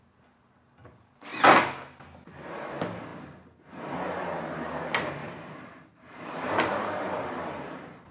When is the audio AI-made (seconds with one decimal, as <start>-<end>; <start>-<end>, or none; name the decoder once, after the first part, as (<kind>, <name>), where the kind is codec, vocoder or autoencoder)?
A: 5.2-8.1 (vocoder, BigVGAN v2)